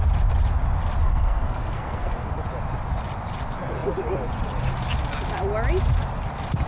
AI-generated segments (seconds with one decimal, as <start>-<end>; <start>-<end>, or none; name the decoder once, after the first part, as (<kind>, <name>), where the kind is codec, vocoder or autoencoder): 1.0-2.3 (codec, SNAC)